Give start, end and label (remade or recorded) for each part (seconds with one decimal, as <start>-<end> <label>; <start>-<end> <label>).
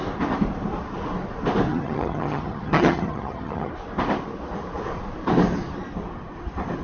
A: 0.0-1.7 recorded; 1.7-3.7 remade; 3.7-6.8 recorded